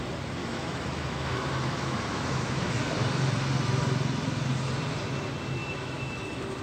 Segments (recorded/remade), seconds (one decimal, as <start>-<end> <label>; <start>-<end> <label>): 0.0-0.4 recorded; 0.4-2.8 remade; 2.8-5.6 recorded; 5.6-6.6 remade

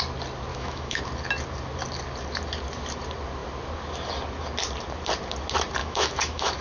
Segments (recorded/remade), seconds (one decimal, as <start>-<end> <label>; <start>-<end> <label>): 0.0-0.5 recorded; 0.5-1.0 remade; 1.0-5.8 recorded; 5.8-6.6 remade

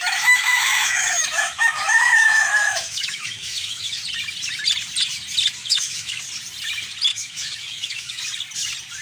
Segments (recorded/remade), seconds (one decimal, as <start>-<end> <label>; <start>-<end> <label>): 0.0-4.0 remade; 4.0-5.6 recorded; 5.6-6.2 remade; 6.2-7.1 recorded; 7.1-8.2 remade; 8.2-9.0 recorded